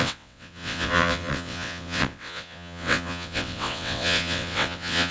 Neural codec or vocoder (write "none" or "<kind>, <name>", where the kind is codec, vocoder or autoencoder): vocoder, WaveNeXt